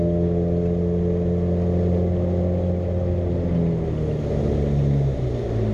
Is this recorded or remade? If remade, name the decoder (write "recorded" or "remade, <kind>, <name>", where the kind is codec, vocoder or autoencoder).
recorded